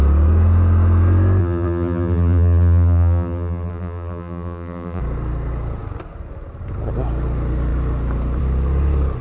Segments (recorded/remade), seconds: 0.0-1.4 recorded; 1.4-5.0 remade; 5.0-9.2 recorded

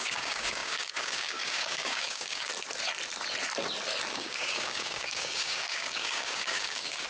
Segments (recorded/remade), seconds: 0.0-2.5 remade; 2.5-4.1 recorded; 4.1-7.1 remade